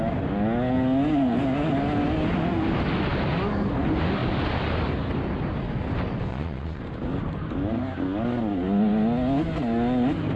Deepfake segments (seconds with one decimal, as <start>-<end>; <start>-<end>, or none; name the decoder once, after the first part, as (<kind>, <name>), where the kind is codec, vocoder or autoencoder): 6.3-6.8 (vocoder, Vocos)